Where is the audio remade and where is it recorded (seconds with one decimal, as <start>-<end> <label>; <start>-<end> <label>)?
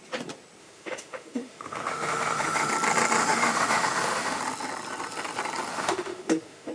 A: 0.0-0.6 recorded; 0.6-2.7 remade; 2.7-3.2 recorded; 3.2-4.4 remade; 4.4-5.7 recorded; 5.7-6.7 remade